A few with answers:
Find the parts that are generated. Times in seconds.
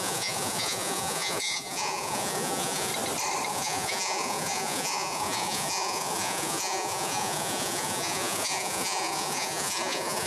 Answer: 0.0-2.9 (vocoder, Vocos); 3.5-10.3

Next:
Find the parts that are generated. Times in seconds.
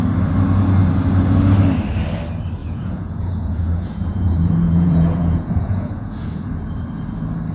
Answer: 2.6-6.5 (vocoder, Vocos)